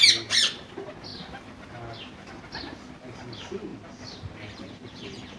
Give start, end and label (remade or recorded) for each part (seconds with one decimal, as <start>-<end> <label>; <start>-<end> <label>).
0.0-5.4 recorded